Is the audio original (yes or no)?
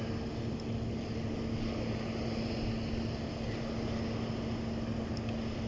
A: yes